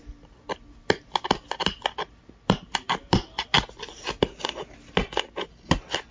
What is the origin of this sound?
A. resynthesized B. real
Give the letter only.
B